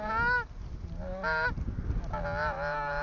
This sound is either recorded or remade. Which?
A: recorded